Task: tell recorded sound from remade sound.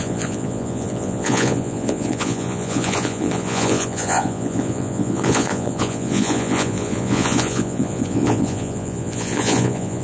remade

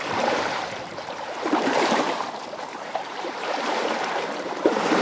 remade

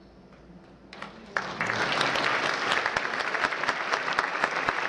recorded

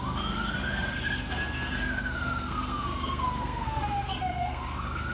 remade